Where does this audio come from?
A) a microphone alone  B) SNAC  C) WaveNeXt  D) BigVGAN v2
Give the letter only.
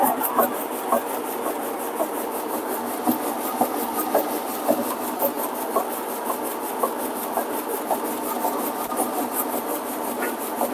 A